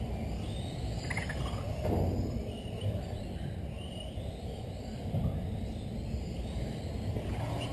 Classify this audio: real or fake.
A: real